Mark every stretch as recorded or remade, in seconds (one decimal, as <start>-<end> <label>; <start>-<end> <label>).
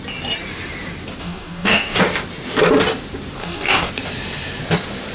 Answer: 0.0-1.2 recorded; 1.2-2.0 remade; 2.0-3.4 recorded; 3.4-3.9 remade; 3.9-5.1 recorded